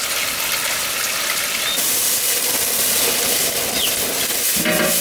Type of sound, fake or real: real